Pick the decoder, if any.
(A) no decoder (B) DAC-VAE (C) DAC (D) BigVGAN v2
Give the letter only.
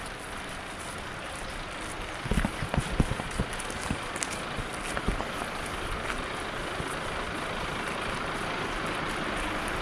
A